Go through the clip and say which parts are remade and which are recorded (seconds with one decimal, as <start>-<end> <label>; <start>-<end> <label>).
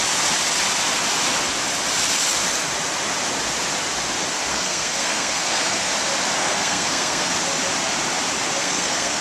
0.0-4.5 recorded; 4.5-5.9 remade; 5.9-6.4 recorded; 6.4-7.3 remade; 7.3-8.6 recorded; 8.6-9.2 remade